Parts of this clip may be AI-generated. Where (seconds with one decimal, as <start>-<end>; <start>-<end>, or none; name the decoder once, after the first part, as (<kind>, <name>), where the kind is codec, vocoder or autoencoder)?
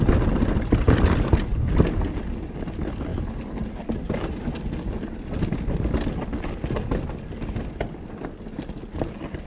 3.1-3.6 (vocoder, BigVGAN v2)